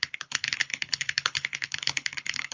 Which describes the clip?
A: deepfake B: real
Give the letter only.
A